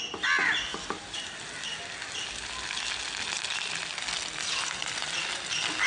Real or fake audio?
real